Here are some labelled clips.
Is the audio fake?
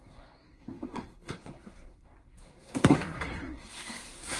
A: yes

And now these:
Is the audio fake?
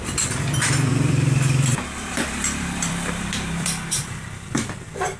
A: yes